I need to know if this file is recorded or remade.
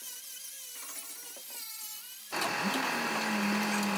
recorded